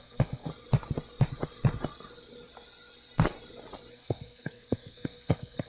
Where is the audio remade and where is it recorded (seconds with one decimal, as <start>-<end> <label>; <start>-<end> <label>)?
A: 0.0-0.5 remade; 0.5-3.9 recorded; 3.9-5.7 remade